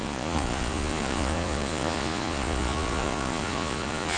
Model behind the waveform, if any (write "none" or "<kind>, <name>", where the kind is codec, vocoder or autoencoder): vocoder, Vocos